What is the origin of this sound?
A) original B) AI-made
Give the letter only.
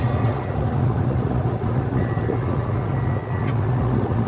B